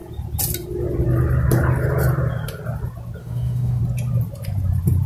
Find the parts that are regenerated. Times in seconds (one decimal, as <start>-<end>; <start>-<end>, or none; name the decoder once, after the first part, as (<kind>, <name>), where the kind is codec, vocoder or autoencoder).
3.2-3.8 (autoencoder, DAC-VAE)